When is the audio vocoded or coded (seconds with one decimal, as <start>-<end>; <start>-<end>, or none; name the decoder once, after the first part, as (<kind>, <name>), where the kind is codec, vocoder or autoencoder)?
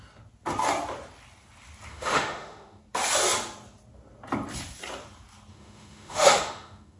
1.9-2.8 (autoencoder, DAC-VAE); 5.5-7.0